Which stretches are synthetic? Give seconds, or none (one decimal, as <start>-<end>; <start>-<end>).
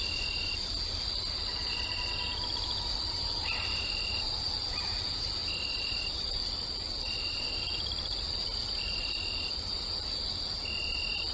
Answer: none